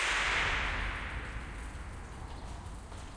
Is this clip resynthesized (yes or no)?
no